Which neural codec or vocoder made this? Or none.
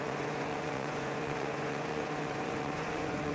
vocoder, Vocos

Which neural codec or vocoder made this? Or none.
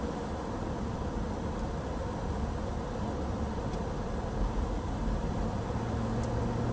none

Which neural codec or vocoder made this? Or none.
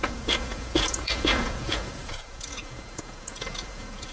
vocoder, Vocos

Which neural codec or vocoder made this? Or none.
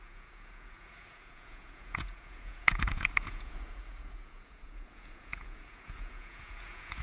vocoder, Vocos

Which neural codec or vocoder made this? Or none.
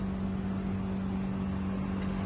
none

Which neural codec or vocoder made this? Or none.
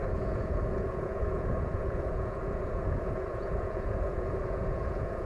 vocoder, Vocos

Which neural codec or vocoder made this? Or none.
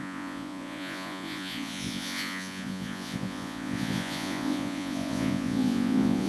vocoder, Vocos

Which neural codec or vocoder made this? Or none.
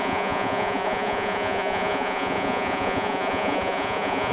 vocoder, Vocos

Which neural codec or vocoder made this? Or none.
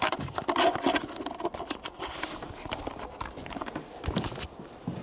none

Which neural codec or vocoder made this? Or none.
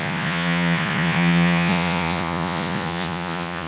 vocoder, Vocos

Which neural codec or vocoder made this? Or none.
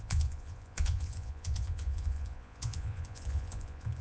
vocoder, Vocos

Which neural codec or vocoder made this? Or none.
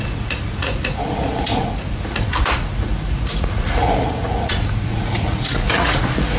vocoder, Vocos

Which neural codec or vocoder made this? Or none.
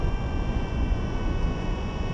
vocoder, Vocos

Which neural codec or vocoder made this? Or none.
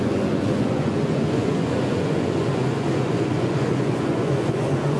vocoder, Vocos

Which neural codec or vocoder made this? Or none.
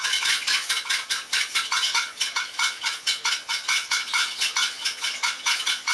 vocoder, Vocos